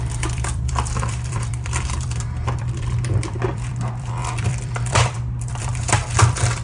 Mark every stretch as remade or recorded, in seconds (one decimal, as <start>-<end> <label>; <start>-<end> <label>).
0.0-6.6 remade